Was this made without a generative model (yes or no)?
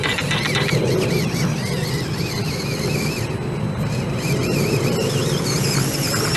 yes